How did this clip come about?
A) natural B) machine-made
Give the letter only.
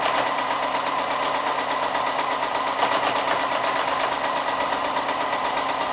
A